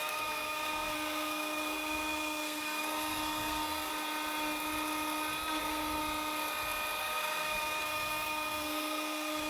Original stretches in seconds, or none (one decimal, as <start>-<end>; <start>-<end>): 3.9-5.6; 6.0-7.0